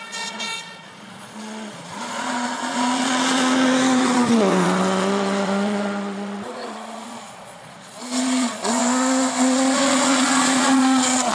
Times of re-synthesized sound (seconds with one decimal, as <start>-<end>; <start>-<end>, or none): 0.0-8.8; 9.4-11.3